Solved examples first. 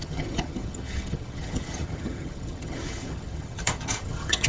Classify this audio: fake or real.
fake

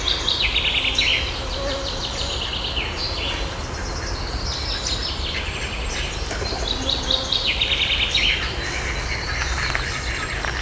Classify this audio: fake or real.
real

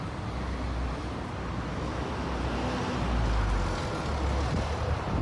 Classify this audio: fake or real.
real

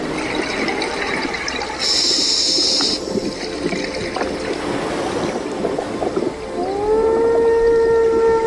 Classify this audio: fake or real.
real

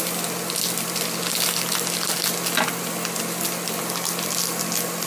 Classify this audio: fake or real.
real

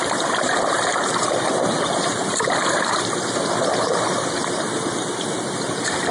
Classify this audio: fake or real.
fake